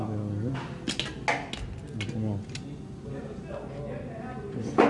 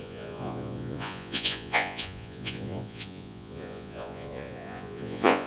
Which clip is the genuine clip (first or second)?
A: first